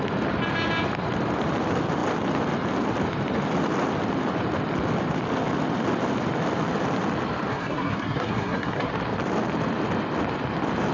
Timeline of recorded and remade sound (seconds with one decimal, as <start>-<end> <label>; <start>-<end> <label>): 0.0-7.5 recorded; 7.5-8.9 remade; 8.9-10.9 recorded